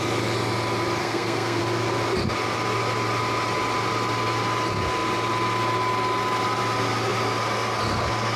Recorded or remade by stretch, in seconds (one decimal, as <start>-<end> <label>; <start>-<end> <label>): 0.0-1.0 recorded; 1.0-1.6 remade; 1.6-8.4 recorded